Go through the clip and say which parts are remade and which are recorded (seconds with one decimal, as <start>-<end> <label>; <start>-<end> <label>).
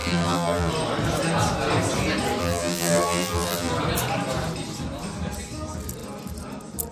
0.0-0.7 remade; 0.7-2.4 recorded; 2.4-3.7 remade; 3.7-6.9 recorded